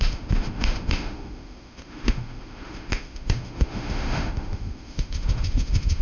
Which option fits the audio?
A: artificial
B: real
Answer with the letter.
A